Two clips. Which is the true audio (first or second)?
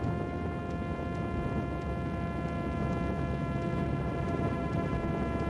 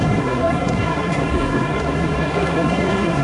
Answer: first